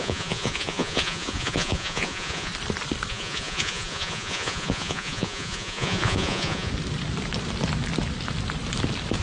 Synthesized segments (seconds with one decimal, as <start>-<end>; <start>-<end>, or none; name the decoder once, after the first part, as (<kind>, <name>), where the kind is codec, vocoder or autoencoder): 0.0-2.5 (vocoder, Vocos); 3.1-6.7